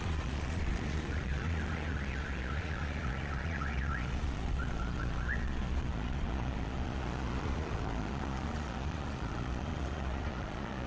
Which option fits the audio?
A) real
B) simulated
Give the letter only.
B